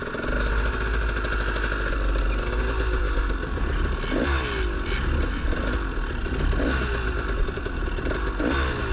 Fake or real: real